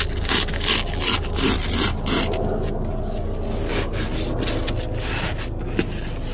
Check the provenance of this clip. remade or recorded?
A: recorded